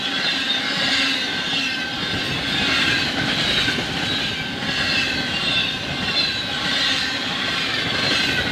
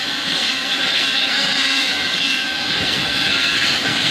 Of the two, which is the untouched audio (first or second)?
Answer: first